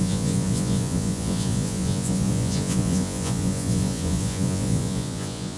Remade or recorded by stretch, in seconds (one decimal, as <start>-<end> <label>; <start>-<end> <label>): 0.0-5.6 remade